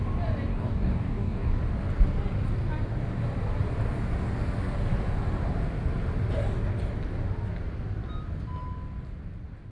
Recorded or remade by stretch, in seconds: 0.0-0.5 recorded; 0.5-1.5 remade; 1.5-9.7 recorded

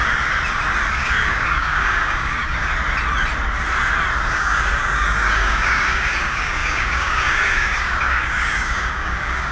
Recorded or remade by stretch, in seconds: 0.0-0.9 recorded; 0.9-2.7 remade; 2.7-4.3 recorded; 4.3-9.5 remade

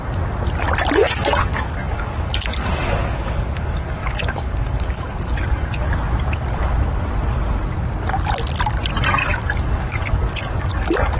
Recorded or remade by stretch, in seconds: 0.0-1.0 recorded; 1.0-5.8 remade; 5.8-9.2 recorded; 9.2-11.2 remade

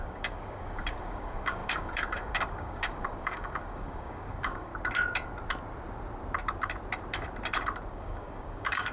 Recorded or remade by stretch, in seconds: 0.0-4.7 remade; 4.7-7.9 recorded; 7.9-8.9 remade

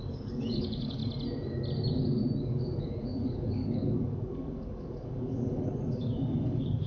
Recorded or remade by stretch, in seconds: 0.0-1.0 remade; 1.0-2.4 recorded; 2.4-6.9 remade